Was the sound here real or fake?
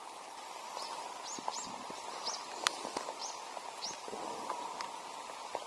real